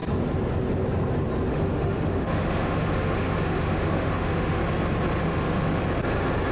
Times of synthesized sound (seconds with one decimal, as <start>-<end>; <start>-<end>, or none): 1.5-4.6; 5.2-5.8